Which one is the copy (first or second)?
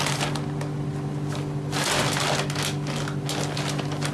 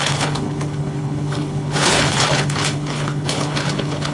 second